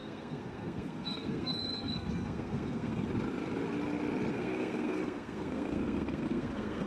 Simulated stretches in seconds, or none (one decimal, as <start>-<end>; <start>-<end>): 0.0-3.1; 4.3-6.9